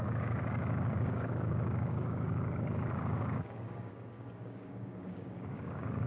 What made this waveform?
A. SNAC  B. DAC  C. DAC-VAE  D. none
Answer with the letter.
B